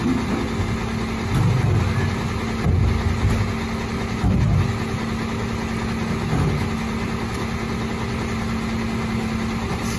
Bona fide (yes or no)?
yes